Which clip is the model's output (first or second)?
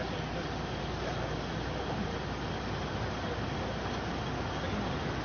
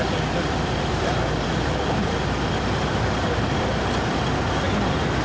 second